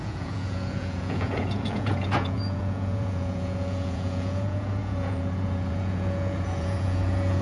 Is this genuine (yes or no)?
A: no